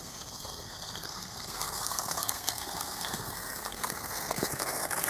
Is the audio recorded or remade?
remade